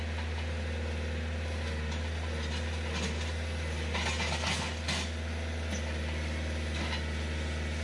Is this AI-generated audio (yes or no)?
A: no